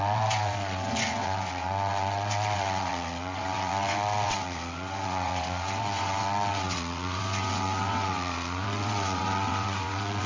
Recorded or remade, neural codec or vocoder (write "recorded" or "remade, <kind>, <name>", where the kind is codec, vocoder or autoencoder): remade, vocoder, WaveNeXt